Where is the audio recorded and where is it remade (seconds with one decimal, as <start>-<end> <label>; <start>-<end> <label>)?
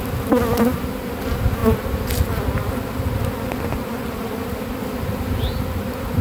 0.0-6.2 recorded